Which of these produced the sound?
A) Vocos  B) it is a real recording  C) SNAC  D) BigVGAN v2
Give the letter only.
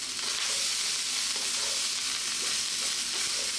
B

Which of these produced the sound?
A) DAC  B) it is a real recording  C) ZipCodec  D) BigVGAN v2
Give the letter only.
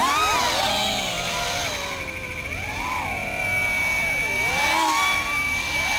B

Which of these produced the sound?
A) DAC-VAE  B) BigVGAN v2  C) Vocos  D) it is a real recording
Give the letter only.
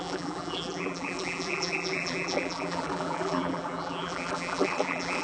B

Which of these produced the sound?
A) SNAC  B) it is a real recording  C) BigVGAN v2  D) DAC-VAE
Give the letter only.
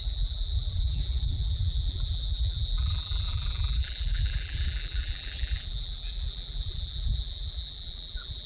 C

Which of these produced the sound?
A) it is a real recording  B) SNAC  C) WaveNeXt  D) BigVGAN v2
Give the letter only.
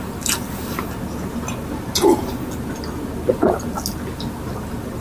A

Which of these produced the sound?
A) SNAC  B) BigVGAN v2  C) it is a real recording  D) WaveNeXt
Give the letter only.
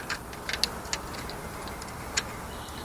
C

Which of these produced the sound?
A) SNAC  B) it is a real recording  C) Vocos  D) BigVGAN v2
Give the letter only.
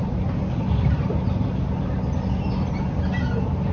B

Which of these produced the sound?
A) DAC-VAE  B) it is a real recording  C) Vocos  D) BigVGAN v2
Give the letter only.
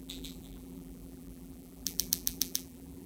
D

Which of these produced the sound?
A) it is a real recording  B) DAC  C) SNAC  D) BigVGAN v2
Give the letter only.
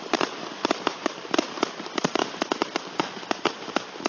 D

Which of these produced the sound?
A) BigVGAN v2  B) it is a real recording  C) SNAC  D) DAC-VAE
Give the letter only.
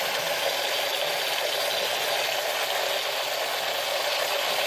B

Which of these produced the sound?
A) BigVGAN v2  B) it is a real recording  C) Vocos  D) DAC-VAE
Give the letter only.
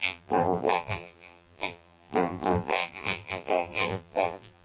A